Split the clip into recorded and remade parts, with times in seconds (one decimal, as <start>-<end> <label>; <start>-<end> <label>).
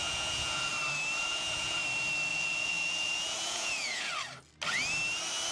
0.0-0.7 remade; 0.7-1.2 recorded; 1.2-1.8 remade; 1.8-2.3 recorded; 2.3-4.1 remade; 4.1-5.5 recorded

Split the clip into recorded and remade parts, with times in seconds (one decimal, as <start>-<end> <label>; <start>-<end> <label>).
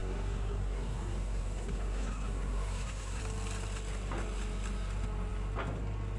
0.0-3.2 remade; 3.2-6.2 recorded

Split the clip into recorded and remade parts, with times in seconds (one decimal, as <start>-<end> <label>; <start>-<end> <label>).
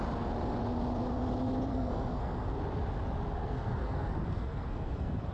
0.0-1.7 recorded; 1.7-2.6 remade; 2.6-3.4 recorded; 3.4-5.3 remade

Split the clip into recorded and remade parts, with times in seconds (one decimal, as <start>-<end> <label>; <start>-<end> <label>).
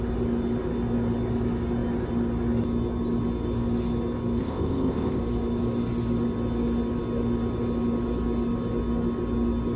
0.0-4.4 recorded; 4.4-5.2 remade; 5.2-9.8 recorded